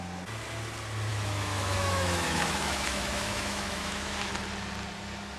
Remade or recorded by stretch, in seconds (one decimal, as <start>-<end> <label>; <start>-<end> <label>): 0.0-1.1 recorded; 1.1-4.3 remade; 4.3-5.4 recorded